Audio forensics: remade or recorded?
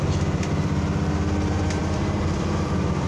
remade